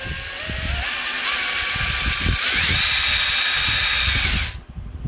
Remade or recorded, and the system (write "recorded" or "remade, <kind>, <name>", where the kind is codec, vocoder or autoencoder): recorded